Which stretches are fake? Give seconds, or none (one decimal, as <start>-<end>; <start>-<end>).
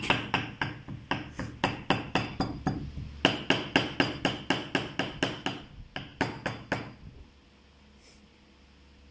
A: none